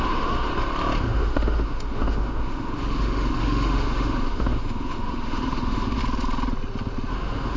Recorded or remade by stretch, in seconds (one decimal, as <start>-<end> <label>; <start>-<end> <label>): 0.0-0.5 remade; 0.5-1.0 recorded; 1.0-6.0 remade; 6.0-7.1 recorded; 7.1-7.6 remade